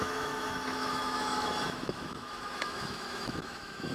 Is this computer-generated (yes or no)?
yes